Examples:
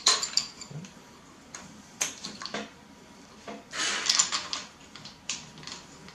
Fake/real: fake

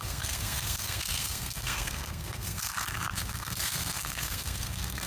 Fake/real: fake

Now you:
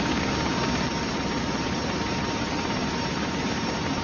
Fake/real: fake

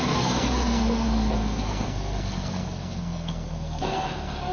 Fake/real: fake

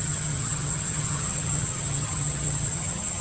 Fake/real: fake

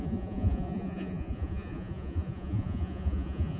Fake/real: fake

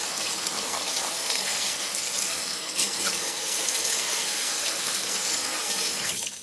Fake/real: fake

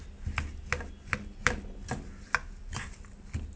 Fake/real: real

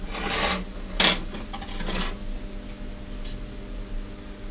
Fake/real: real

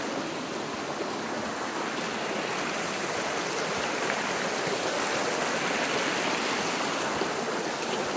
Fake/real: real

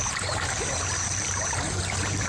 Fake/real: fake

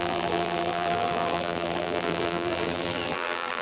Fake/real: fake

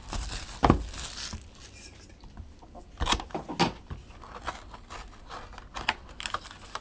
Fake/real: real